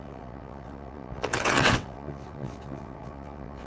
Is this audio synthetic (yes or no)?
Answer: yes